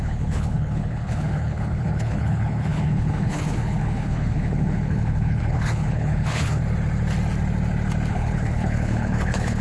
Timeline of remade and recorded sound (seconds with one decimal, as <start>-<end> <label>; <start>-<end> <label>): 0.0-6.6 remade; 6.6-8.1 recorded; 8.1-9.6 remade